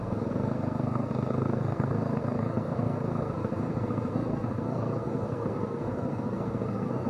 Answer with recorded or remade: remade